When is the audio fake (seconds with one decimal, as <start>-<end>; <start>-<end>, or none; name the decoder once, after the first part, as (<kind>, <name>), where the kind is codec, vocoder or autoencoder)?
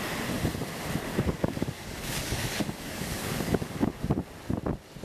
1.1-4.0 (codec, DAC)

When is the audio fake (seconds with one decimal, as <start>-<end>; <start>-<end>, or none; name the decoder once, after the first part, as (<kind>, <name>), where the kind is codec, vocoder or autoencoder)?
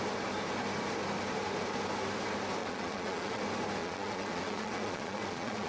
2.6-3.4 (vocoder, Vocos); 3.8-5.7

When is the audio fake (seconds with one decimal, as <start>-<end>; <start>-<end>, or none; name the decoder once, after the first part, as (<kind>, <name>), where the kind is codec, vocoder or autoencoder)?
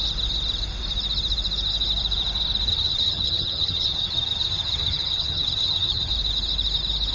2.7-6.1 (vocoder, HiFi-GAN)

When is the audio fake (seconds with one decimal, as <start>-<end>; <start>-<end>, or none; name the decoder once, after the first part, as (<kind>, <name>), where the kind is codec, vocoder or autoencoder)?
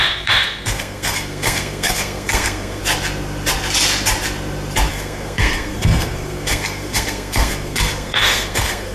0.0-2.8 (codec, SNAC); 4.9-8.9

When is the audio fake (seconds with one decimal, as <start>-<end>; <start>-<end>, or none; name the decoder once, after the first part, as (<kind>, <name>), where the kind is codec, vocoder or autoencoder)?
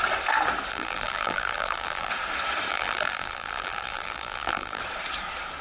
0.7-2.1 (vocoder, BigVGAN v2); 2.7-4.8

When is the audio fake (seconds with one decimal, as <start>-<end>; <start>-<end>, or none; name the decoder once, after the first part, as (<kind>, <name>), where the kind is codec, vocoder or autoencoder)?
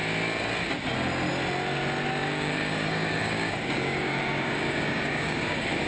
2.2-5.9 (codec, DAC)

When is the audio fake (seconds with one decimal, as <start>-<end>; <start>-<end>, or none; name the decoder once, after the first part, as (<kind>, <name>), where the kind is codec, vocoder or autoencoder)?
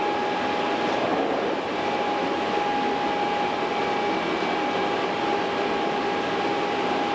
none